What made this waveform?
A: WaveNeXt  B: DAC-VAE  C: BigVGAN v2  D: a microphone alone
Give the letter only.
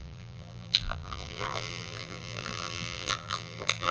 C